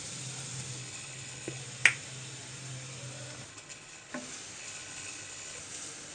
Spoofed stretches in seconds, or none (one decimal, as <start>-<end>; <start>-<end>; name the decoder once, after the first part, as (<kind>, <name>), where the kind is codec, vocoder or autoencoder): 0.8-1.6 (codec, HILCodec); 3.5-4.1; 4.6-5.6